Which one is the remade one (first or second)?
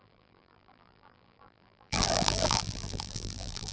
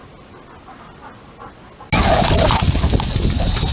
first